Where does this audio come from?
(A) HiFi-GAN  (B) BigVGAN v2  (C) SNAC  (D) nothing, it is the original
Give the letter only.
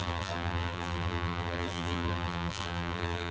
B